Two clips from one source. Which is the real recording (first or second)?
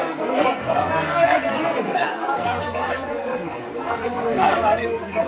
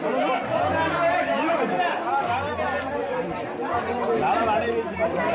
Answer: second